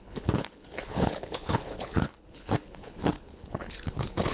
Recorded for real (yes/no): no